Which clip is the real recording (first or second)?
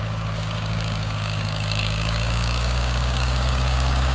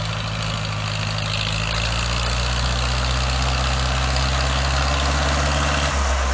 second